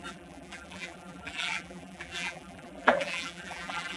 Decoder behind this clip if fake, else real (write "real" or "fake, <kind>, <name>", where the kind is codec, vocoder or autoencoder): fake, vocoder, BigVGAN v2